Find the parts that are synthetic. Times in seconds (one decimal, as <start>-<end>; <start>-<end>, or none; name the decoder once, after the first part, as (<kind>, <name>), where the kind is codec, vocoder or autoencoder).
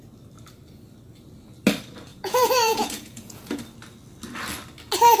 2.1-3.6 (vocoder, Vocos)